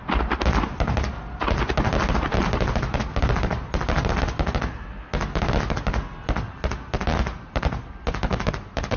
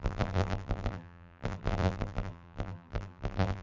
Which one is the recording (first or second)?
first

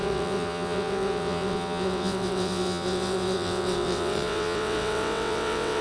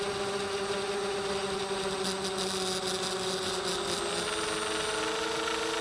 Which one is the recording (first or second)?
second